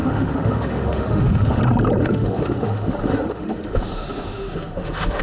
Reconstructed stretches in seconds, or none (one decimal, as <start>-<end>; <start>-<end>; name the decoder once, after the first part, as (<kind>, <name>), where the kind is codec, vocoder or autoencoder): 0.0-1.6 (autoencoder, DAC-VAE); 2.0-5.2